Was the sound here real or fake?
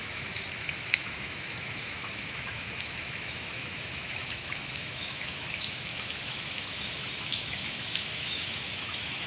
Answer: fake